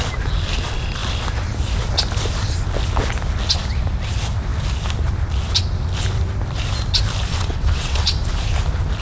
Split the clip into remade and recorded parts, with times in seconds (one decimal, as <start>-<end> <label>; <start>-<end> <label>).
0.0-7.3 recorded; 7.3-8.2 remade; 8.2-9.0 recorded

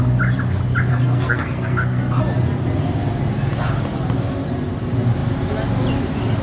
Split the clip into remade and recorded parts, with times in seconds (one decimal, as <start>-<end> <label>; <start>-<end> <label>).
0.0-0.9 recorded; 0.9-2.2 remade; 2.2-6.4 recorded

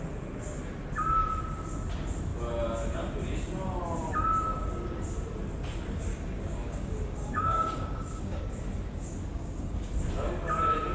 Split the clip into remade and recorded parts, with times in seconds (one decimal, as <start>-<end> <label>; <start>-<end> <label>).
0.0-6.1 recorded; 6.1-8.4 remade; 8.4-9.3 recorded; 9.3-9.9 remade; 9.9-10.9 recorded

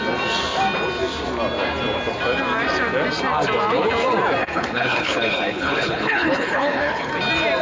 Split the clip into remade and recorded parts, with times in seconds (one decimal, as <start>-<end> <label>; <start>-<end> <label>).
0.0-4.4 recorded; 4.4-7.1 remade; 7.1-7.6 recorded

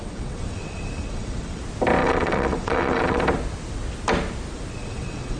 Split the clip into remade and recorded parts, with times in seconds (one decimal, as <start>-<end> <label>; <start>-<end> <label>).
0.0-1.6 remade; 1.6-2.0 recorded; 2.0-3.2 remade; 3.2-4.8 recorded; 4.8-5.4 remade

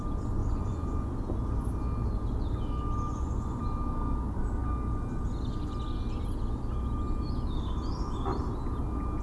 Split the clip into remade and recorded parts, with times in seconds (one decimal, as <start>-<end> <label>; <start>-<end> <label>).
0.0-0.4 recorded; 0.4-1.2 remade; 1.2-3.1 recorded; 3.1-3.6 remade; 3.6-9.2 recorded

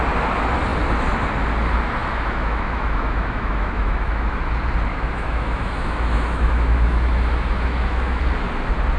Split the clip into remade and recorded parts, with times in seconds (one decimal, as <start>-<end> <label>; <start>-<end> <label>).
0.0-2.0 recorded; 2.0-4.4 remade; 4.4-4.9 recorded; 4.9-8.2 remade; 8.2-9.0 recorded

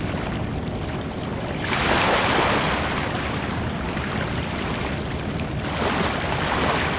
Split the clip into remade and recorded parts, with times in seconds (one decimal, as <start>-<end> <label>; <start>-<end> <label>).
0.0-7.0 recorded